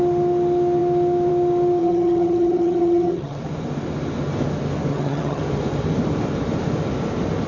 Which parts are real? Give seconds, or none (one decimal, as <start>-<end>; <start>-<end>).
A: 0.0-1.8; 3.4-4.9; 5.4-7.5